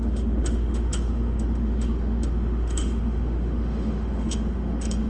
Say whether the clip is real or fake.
fake